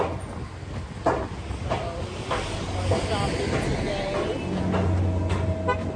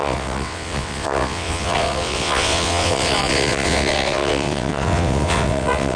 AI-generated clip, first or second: second